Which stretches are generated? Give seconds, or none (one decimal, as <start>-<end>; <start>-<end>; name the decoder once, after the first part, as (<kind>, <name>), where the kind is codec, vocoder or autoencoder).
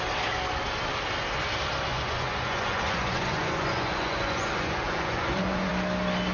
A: 1.9-5.7 (vocoder, Vocos)